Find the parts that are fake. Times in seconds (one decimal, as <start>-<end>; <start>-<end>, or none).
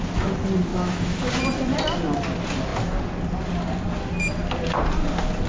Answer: 0.7-1.3